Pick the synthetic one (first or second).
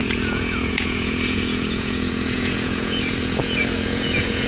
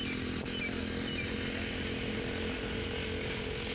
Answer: first